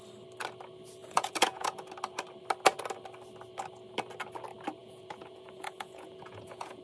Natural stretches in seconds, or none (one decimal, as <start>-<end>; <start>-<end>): 0.0-1.0; 1.9-4.8